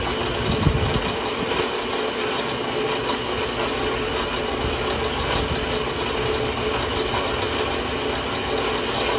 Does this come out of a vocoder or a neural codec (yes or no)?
no